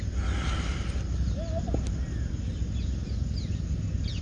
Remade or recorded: recorded